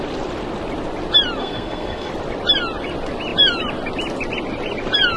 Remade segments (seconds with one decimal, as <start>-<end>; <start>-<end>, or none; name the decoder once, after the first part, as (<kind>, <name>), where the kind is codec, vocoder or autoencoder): 1.4-2.1 (codec, SNAC)